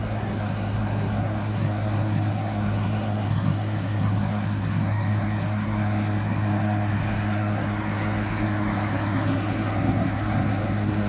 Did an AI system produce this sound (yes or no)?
yes